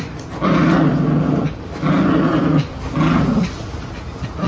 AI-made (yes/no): no